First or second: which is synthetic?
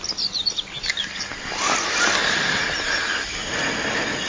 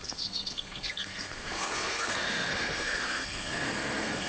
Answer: second